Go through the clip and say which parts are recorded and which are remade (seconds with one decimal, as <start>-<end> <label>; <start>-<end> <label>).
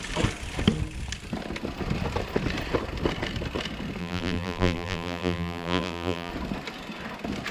0.0-4.0 recorded; 4.0-6.3 remade; 6.3-7.5 recorded